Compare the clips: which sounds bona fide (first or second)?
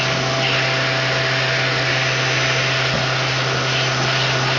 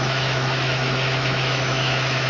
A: first